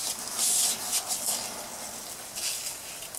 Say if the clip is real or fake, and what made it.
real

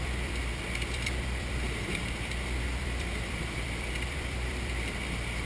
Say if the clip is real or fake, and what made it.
fake, vocoder, BigVGAN v2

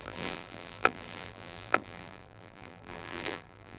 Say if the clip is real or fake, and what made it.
fake, vocoder, BigVGAN v2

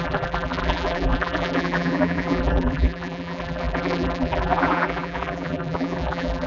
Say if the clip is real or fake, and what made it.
fake, vocoder, BigVGAN v2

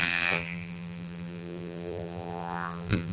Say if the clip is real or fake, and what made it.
fake, vocoder, BigVGAN v2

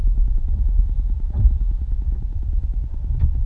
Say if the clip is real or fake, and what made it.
fake, vocoder, BigVGAN v2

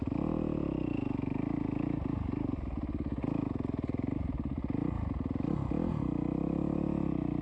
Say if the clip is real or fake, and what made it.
real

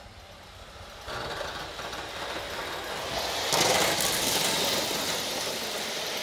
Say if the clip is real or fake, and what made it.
real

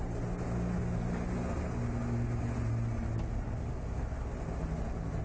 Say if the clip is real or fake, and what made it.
real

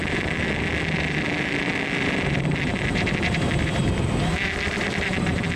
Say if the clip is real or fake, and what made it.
fake, vocoder, BigVGAN v2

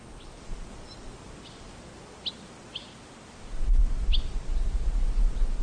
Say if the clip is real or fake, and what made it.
real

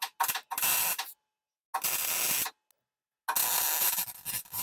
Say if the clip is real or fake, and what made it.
real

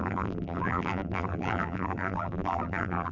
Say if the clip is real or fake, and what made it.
fake, vocoder, BigVGAN v2